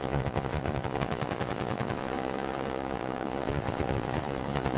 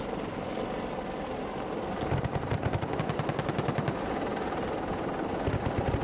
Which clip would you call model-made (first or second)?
first